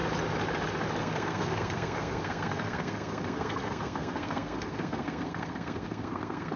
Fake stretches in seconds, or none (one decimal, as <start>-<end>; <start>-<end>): 1.0-6.6